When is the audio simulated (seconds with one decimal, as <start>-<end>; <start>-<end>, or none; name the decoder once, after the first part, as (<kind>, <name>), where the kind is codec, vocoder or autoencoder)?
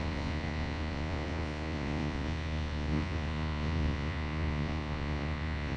0.0-5.8 (vocoder, Vocos)